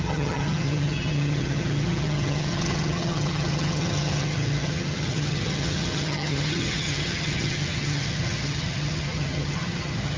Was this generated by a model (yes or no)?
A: yes